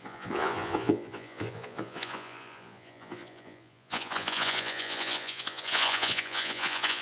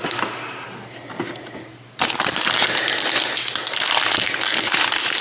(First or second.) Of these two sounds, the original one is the second